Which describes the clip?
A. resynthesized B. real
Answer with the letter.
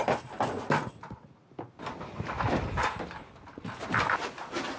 B